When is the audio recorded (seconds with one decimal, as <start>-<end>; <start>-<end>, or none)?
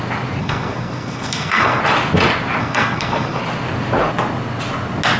0.0-0.4; 1.8-2.6; 3.4-5.2